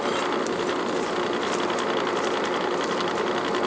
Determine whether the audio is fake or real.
real